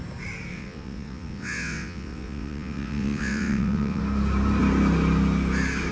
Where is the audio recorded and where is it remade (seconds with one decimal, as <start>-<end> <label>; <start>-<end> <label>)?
0.0-0.5 recorded; 0.5-4.0 remade; 4.0-5.9 recorded